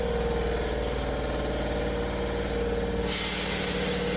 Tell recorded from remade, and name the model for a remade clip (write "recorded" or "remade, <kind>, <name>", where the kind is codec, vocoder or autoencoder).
recorded